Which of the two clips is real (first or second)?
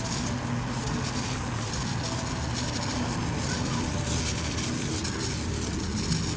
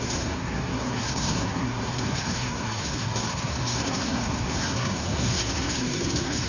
first